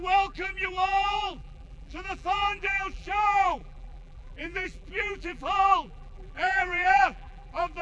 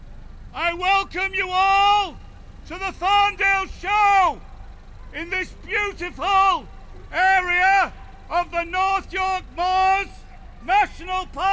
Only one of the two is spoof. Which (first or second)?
first